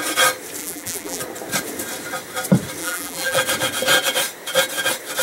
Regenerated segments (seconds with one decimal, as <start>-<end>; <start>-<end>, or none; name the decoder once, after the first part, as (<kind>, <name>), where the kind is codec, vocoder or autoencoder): 0.6-1.2 (vocoder, BigVGAN v2); 2.8-3.4